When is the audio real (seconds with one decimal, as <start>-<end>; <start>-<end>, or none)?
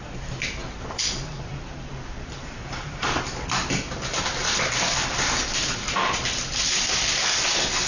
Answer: 0.0-0.6; 4.2-5.1; 6.5-7.9